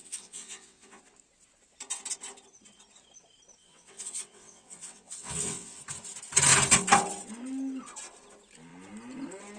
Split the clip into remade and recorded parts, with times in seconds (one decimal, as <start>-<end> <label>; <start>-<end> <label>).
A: 0.0-1.0 remade; 1.0-3.6 recorded; 3.6-5.8 remade; 5.8-9.6 recorded